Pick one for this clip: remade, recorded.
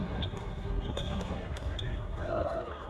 remade